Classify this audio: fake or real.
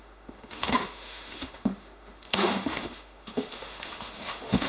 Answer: fake